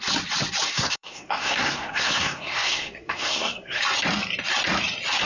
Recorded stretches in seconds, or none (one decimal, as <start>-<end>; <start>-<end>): 0.0-0.7; 3.8-5.2